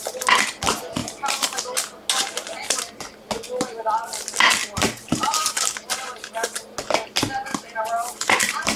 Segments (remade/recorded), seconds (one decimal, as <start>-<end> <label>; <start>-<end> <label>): 0.0-1.0 recorded; 1.0-1.6 remade; 1.6-4.6 recorded; 4.6-5.6 remade; 5.6-7.5 recorded; 7.5-8.8 remade